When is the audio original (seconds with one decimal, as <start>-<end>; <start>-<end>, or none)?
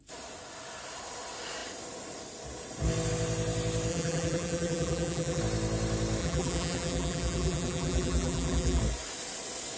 0.0-3.9; 5.4-6.2; 8.8-9.8